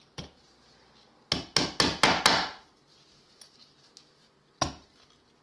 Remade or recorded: recorded